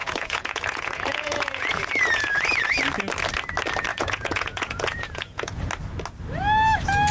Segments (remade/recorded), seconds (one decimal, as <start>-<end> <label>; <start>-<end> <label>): 0.0-2.8 remade; 2.8-3.9 recorded; 3.9-5.6 remade; 5.6-7.1 recorded